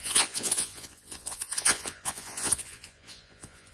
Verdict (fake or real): fake